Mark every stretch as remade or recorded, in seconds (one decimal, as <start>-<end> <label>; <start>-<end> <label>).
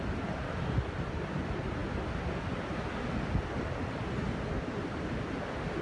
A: 0.0-5.8 recorded